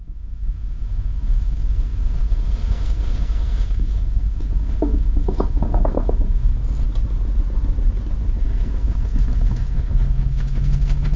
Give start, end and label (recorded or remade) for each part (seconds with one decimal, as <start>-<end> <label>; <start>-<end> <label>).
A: 0.0-6.5 remade; 6.5-8.4 recorded; 8.4-11.2 remade

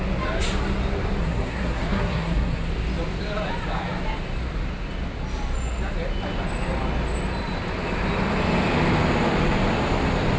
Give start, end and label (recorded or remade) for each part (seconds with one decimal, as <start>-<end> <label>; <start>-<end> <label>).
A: 0.0-1.2 recorded; 1.2-2.7 remade; 2.7-10.4 recorded

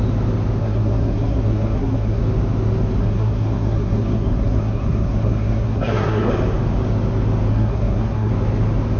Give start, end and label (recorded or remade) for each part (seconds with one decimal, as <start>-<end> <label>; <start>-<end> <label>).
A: 0.0-0.6 recorded; 0.6-2.2 remade; 2.2-3.0 recorded; 3.0-6.3 remade; 6.3-7.5 recorded; 7.5-8.3 remade; 8.3-9.0 recorded

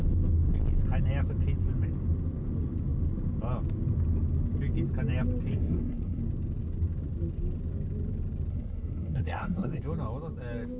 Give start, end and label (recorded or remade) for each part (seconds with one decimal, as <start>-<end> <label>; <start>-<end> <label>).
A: 0.0-5.5 recorded; 5.5-6.2 remade; 6.2-8.5 recorded; 8.5-9.8 remade; 9.8-10.8 recorded

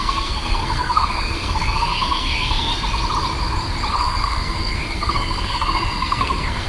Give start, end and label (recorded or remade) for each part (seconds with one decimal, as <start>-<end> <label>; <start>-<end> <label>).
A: 0.0-2.7 remade; 2.7-3.9 recorded; 3.9-6.7 remade

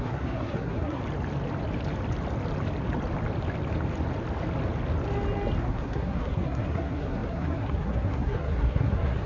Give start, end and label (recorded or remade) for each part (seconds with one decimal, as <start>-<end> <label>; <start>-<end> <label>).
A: 0.0-1.0 remade; 1.0-5.6 recorded; 5.6-9.3 remade

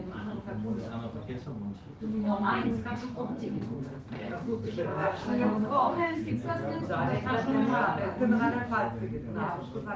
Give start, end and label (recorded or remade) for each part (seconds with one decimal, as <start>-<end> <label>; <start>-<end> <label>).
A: 0.0-2.1 recorded; 2.1-6.3 remade; 6.3-10.0 recorded

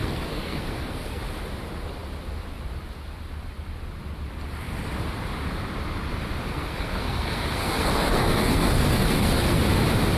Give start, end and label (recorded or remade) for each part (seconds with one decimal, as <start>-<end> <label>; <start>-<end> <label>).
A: 0.0-1.2 remade; 1.2-6.5 recorded; 6.5-9.6 remade; 9.6-10.2 recorded